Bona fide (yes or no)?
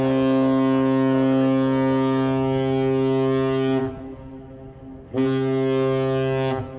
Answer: yes